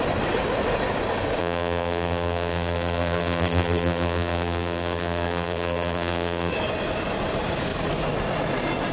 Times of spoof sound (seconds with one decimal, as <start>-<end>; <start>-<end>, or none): 1.4-6.5